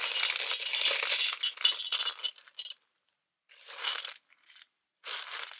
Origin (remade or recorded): recorded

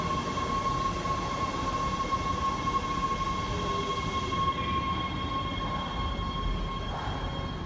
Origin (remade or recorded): recorded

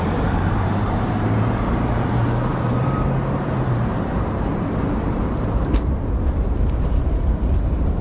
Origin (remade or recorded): remade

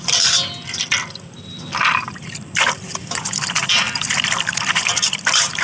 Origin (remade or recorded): remade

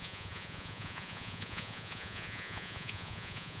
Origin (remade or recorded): remade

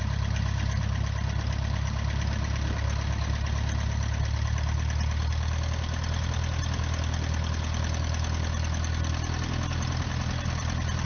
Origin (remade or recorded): recorded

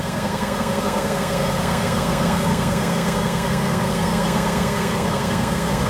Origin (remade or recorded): remade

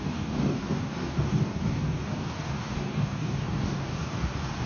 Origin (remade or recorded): remade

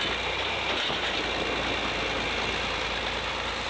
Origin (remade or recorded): recorded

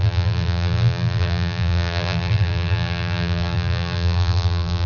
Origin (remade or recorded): remade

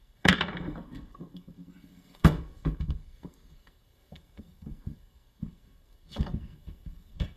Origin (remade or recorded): remade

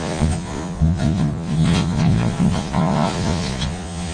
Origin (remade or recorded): remade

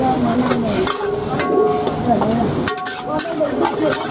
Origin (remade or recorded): recorded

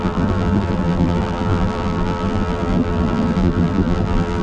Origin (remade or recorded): remade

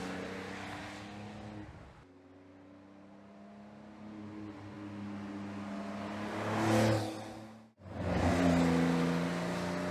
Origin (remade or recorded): recorded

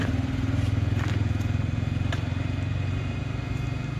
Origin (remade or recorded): recorded